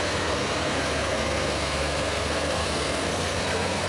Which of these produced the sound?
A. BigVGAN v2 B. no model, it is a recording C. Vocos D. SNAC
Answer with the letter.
D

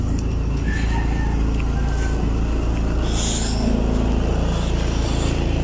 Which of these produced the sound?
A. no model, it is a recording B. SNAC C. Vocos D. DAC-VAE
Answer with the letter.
A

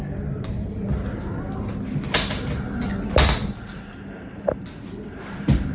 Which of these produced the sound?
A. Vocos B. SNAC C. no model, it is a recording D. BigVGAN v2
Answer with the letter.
C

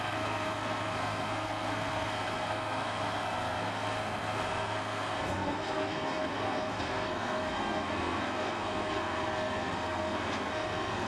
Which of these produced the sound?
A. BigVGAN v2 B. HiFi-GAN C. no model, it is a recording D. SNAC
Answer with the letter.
D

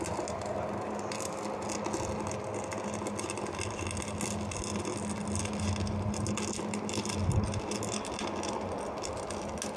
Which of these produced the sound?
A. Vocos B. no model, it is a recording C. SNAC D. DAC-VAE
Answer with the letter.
B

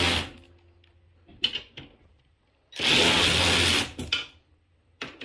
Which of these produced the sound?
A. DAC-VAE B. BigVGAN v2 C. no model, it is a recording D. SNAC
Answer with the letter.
C